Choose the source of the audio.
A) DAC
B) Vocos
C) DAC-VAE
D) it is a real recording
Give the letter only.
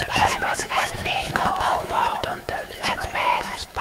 C